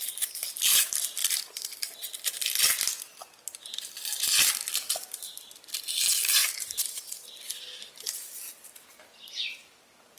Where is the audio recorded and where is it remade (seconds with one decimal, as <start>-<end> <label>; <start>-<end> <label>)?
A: 0.0-1.2 recorded; 1.2-2.3 remade; 2.3-6.4 recorded; 6.4-7.2 remade; 7.2-10.2 recorded